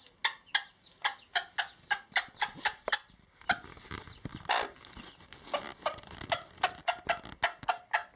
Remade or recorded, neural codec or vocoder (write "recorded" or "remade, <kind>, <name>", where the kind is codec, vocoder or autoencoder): recorded